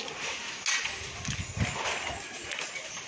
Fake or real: real